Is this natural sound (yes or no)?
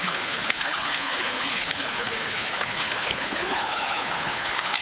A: no